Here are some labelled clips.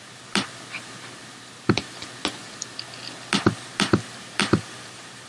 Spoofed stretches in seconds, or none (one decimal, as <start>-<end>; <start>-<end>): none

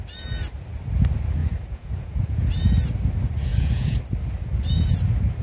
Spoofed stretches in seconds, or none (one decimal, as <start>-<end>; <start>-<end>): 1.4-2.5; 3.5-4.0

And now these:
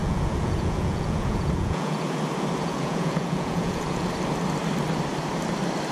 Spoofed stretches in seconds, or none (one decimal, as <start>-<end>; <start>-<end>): 0.0-2.2; 2.6-4.1